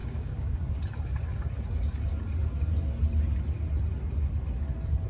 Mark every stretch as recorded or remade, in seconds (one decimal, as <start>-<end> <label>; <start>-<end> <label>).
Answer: 0.0-0.7 remade; 0.7-5.1 recorded